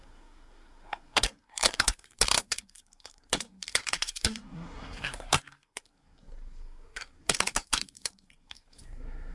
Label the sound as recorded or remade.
remade